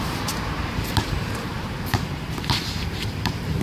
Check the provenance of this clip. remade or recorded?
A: remade